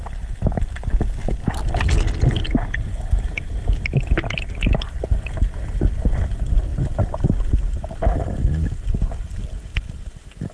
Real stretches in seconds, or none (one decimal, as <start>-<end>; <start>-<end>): 0.0-10.5